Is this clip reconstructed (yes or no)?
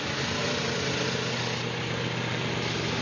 no